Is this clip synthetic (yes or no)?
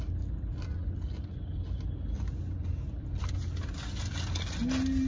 no